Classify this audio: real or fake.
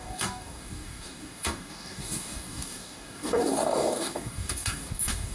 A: fake